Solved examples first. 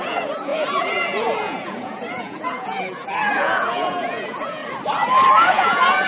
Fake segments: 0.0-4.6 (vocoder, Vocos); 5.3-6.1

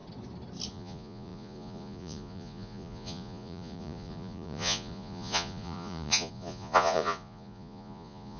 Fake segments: 0.7-8.4 (vocoder, Vocos)

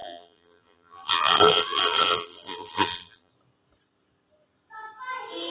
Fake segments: 0.0-3.3 (vocoder, BigVGAN v2)

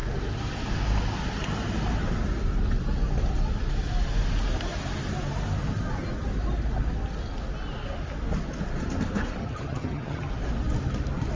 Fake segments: 9.4-10.3 (vocoder, HiFi-GAN)

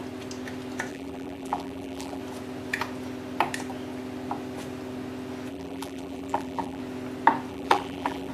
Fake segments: 0.9-2.2 (vocoder, BigVGAN v2); 5.5-6.8; 7.5-8.3